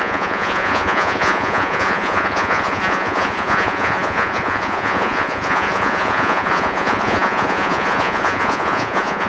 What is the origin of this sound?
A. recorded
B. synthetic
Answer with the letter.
B